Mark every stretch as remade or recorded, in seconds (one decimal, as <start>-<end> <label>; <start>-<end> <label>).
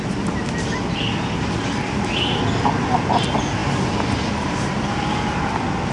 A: 0.0-5.9 recorded